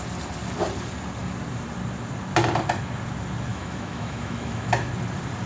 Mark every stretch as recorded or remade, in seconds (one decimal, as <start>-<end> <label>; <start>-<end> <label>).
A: 0.0-3.5 recorded; 3.5-4.9 remade; 4.9-5.5 recorded